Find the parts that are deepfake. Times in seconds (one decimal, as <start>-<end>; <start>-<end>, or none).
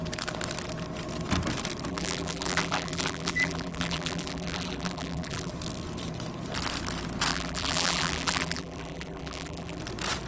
1.9-5.5; 7.3-9.8